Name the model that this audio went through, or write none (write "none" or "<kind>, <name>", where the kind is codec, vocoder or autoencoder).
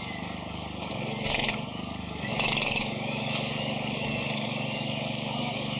codec, DAC